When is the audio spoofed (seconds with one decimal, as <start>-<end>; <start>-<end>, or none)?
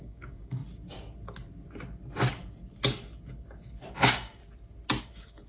0.0-0.6; 3.9-4.4; 5.0-5.5